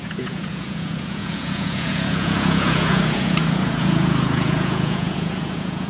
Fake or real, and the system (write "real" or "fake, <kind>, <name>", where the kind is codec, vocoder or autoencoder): fake, vocoder, Vocos